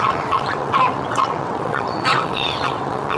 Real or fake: fake